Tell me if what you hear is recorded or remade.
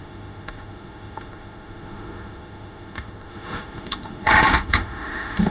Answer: remade